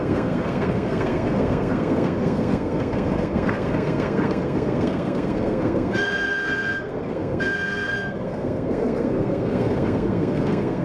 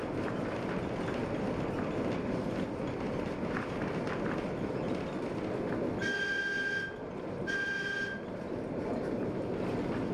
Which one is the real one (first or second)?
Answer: second